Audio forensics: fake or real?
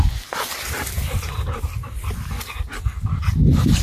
real